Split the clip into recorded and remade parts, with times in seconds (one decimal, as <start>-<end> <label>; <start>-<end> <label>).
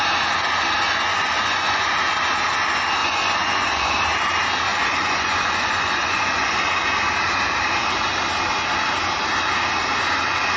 0.0-1.1 recorded; 1.1-2.0 remade; 2.0-3.0 recorded; 3.0-3.9 remade; 3.9-4.7 recorded; 4.7-6.6 remade; 6.6-10.6 recorded